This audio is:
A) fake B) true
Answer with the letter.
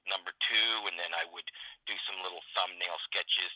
B